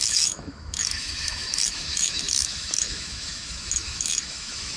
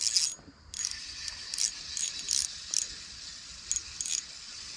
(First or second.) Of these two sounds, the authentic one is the second